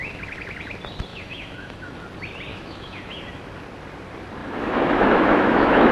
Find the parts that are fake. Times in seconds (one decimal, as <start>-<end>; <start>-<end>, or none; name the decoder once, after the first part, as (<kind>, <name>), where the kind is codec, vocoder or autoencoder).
1.1-2.0 (autoencoder, DAC-VAE); 2.5-3.2; 4.4-5.9